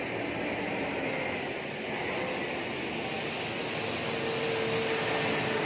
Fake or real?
real